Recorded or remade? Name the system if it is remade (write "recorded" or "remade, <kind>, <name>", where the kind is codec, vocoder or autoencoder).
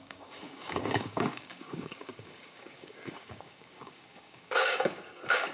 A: remade, codec, DAC